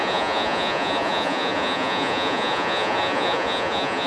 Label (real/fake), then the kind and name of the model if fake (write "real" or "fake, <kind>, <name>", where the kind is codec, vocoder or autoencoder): fake, vocoder, Vocos